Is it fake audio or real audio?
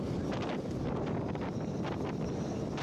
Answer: real